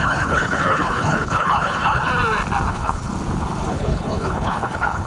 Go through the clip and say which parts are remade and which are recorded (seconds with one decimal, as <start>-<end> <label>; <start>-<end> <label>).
0.0-2.1 remade; 2.1-2.7 recorded; 2.7-3.1 remade; 3.1-3.7 recorded; 3.7-5.1 remade